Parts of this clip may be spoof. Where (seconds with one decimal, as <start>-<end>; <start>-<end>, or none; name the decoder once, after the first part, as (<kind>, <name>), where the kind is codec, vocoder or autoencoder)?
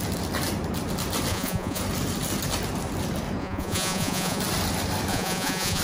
1.3-1.8 (vocoder, Vocos); 3.4-4.4; 5.1-5.8